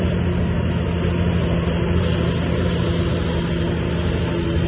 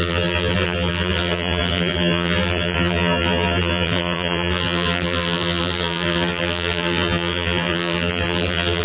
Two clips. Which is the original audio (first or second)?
first